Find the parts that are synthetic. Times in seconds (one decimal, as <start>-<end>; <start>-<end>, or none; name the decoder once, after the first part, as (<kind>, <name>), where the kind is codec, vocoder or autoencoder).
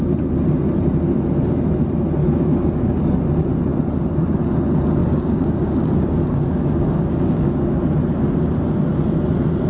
2.2-3.0 (codec, DAC); 5.0-7.8